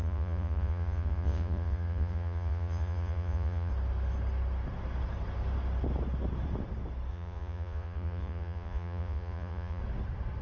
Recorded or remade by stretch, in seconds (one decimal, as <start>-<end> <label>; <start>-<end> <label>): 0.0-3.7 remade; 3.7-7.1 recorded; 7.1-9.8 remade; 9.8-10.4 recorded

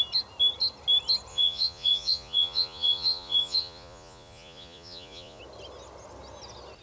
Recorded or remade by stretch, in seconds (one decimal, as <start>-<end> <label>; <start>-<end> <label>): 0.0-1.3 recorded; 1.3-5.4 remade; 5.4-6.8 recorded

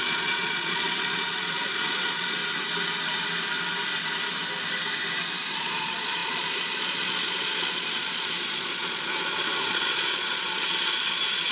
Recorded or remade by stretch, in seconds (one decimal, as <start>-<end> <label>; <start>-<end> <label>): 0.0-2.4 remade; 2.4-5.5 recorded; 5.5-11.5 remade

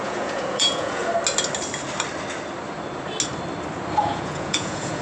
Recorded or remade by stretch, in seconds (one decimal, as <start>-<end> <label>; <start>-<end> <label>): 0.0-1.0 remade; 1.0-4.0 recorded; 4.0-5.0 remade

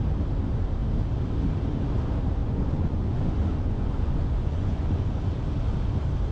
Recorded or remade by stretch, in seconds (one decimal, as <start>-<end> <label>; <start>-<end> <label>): 0.0-2.4 recorded; 2.4-5.2 remade; 5.2-6.3 recorded

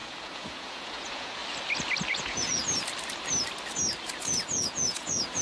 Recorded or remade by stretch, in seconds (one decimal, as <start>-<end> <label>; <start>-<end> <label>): 0.0-1.4 remade; 1.4-2.1 recorded; 2.1-2.6 remade; 2.6-4.1 recorded; 4.1-5.4 remade